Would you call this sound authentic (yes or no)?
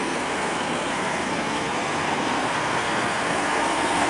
no